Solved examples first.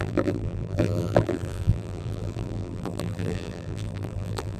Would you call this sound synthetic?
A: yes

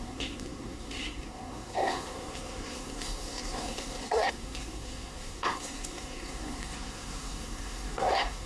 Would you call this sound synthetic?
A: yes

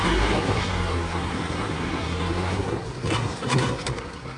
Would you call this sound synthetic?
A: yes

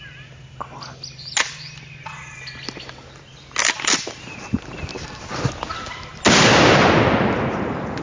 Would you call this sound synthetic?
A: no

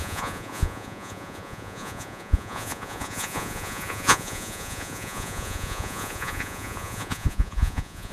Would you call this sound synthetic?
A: yes